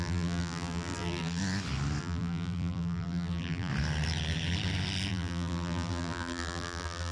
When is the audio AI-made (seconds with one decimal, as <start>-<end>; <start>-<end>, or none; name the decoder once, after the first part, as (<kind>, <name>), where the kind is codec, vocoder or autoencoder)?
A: 0.0-1.4 (vocoder, BigVGAN v2); 2.0-3.7; 5.1-7.1